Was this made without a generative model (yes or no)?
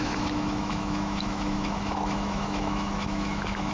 no